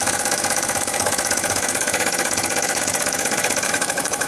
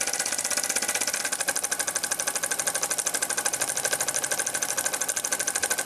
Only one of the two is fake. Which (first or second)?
first